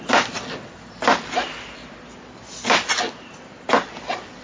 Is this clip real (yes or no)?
yes